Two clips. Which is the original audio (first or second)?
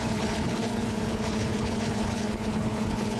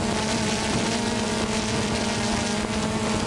second